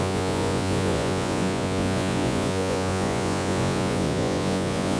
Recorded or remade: remade